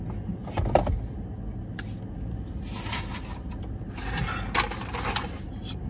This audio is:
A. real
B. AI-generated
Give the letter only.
A